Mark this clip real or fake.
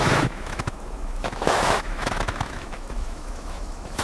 fake